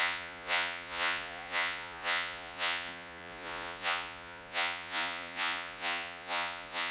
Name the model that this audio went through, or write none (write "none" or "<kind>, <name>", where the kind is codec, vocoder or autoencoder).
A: vocoder, Vocos